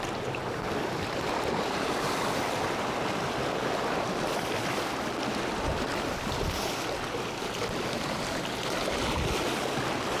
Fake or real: real